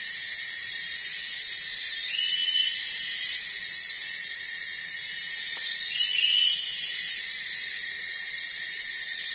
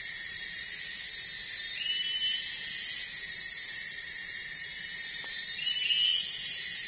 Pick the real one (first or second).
second